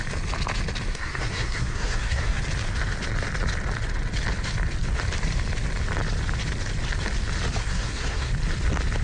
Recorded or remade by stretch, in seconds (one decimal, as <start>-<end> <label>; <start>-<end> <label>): 0.0-0.9 recorded; 0.9-2.4 remade; 2.4-7.6 recorded; 7.6-8.3 remade; 8.3-9.0 recorded